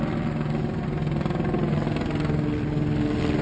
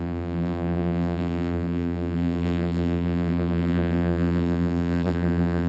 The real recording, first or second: first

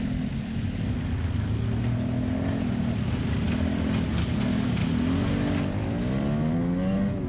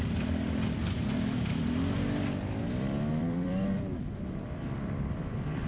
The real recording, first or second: first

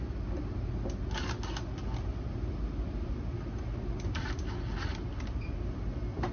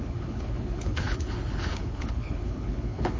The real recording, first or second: first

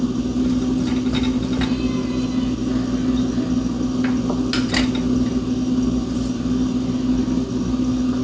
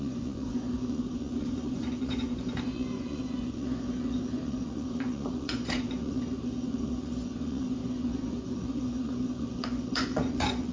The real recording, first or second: first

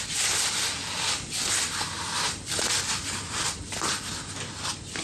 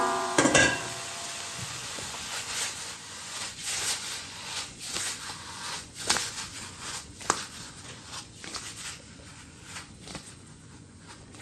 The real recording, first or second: first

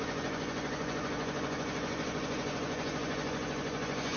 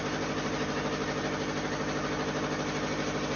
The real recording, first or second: second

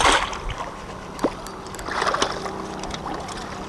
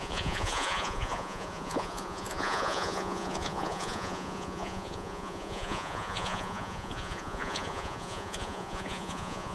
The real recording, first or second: first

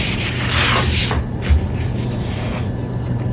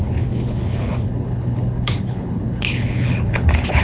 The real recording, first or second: first